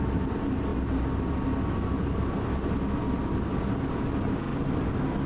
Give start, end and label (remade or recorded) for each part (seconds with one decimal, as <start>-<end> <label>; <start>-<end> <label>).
0.0-5.3 recorded